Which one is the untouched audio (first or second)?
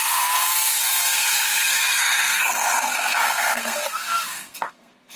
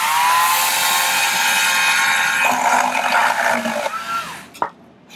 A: second